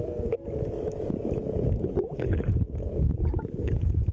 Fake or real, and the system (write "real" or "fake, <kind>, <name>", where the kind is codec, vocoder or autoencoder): fake, codec, DAC